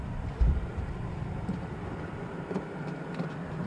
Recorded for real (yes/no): no